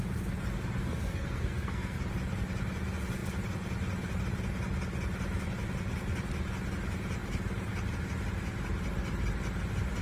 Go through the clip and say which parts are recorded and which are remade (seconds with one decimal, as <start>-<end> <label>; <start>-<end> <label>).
0.0-0.8 recorded; 0.8-2.0 remade; 2.0-10.0 recorded